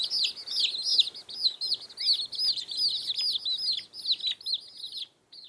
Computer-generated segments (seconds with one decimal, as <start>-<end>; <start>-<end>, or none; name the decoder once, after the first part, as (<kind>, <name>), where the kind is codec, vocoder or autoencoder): none